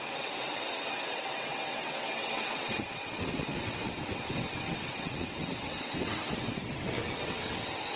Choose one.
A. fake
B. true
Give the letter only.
A